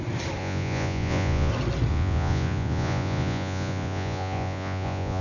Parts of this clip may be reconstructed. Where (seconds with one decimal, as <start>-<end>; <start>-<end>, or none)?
0.4-1.5; 1.9-5.2